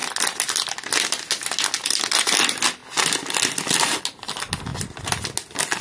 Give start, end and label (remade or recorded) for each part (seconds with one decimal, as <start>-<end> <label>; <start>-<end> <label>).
0.0-5.8 recorded